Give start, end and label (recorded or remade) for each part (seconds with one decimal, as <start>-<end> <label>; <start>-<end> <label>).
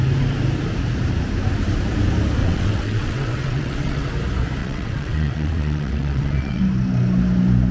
0.0-2.4 recorded; 2.4-4.1 remade; 4.1-4.6 recorded; 4.6-6.6 remade; 6.6-7.7 recorded